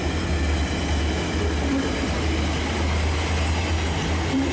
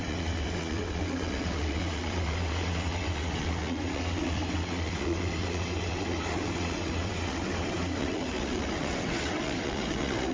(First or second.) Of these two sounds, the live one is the first